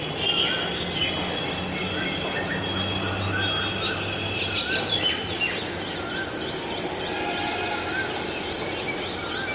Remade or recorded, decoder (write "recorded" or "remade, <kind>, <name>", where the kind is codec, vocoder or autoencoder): recorded